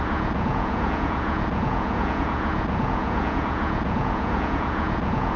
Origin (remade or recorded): remade